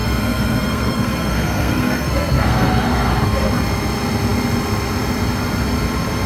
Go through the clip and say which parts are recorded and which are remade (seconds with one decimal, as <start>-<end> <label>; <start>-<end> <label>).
0.0-3.1 remade; 3.1-6.3 recorded